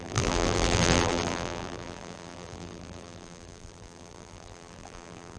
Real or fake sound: fake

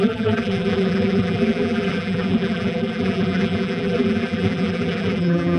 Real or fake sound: fake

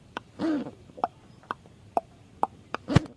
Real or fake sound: fake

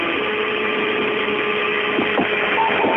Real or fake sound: real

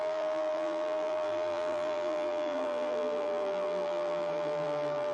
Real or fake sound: fake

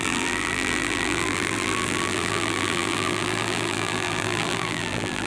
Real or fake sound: fake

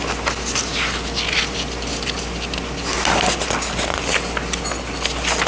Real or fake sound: real